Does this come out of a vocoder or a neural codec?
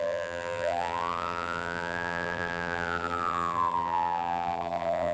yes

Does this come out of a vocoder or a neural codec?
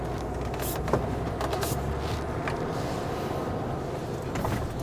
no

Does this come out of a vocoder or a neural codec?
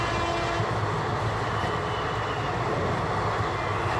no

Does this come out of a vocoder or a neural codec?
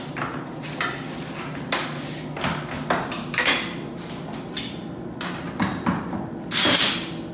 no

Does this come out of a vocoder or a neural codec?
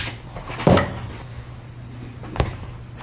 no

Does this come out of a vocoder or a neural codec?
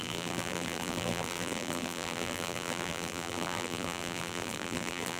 yes